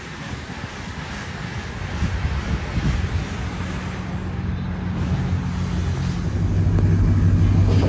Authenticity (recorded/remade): recorded